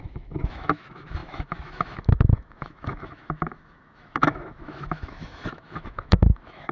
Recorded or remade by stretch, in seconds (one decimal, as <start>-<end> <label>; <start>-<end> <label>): 0.0-6.7 remade